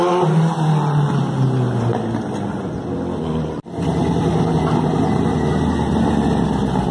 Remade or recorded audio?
recorded